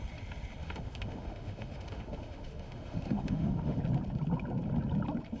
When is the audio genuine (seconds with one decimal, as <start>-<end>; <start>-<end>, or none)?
0.0-0.6; 3.8-5.4